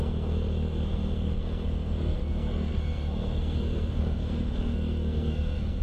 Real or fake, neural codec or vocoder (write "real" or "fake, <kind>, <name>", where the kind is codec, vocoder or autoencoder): fake, codec, SNAC